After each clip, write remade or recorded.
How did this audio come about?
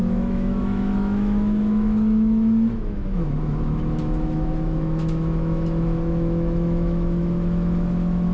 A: remade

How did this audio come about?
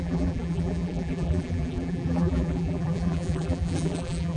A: remade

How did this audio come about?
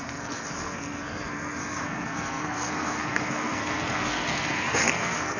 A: remade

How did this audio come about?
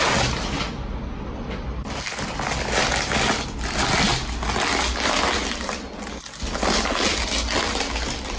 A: recorded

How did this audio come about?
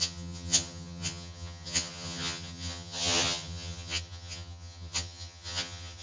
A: remade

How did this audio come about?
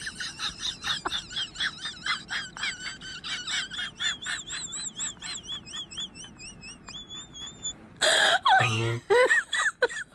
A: recorded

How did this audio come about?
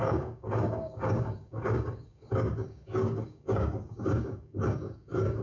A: remade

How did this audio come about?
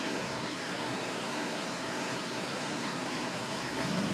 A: remade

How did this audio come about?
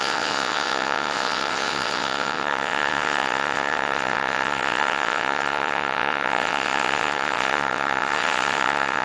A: remade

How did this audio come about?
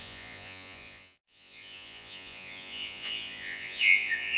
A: remade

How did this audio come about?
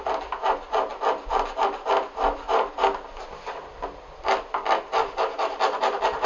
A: recorded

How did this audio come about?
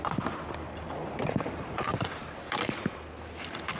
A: recorded